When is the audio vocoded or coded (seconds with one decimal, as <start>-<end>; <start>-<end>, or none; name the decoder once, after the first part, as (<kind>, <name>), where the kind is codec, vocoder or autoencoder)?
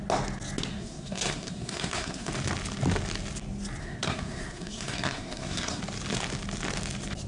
0.7-2.3 (codec, SNAC); 3.8-5.8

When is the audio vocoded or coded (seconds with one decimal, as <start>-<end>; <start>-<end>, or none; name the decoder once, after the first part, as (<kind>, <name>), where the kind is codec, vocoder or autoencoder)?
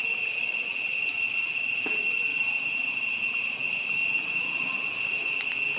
none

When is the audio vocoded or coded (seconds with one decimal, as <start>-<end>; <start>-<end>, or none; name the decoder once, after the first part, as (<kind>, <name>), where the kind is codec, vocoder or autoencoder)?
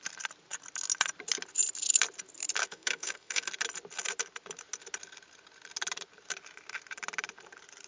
2.6-3.5 (codec, SNAC)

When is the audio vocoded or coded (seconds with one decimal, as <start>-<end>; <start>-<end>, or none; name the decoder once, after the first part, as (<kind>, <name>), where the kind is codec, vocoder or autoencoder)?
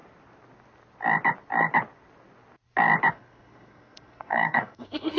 3.1-5.2 (codec, SNAC)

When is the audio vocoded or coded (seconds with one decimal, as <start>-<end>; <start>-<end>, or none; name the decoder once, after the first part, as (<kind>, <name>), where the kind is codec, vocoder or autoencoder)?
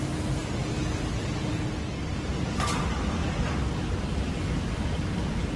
none